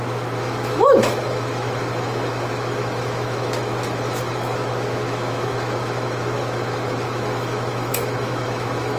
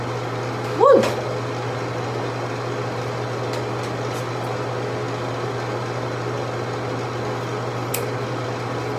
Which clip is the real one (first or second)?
second